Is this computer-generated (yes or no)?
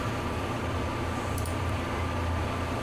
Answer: yes